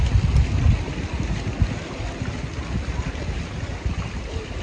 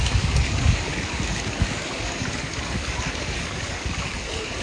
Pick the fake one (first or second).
second